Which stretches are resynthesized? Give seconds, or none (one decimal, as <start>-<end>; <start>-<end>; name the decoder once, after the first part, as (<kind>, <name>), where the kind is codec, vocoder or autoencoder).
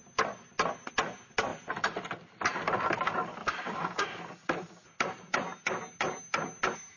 3.4-4.2 (codec, DAC)